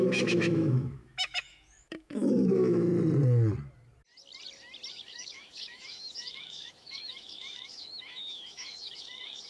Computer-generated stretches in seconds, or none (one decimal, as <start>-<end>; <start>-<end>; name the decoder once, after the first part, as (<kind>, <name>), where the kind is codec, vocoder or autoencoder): 0.0-2.9 (autoencoder, DAC-VAE); 4.9-9.5